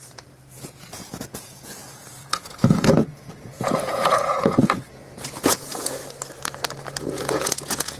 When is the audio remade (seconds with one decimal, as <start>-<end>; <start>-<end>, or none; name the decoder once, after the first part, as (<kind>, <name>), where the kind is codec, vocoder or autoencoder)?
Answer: 0.0-6.0 (vocoder, Vocos); 7.0-8.0